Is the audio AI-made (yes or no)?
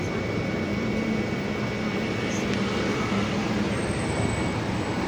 no